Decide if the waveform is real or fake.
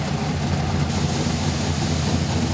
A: real